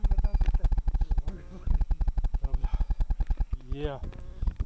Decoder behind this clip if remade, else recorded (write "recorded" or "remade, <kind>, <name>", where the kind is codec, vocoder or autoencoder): recorded